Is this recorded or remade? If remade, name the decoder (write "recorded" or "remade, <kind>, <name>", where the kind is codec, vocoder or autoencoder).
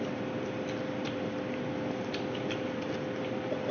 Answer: recorded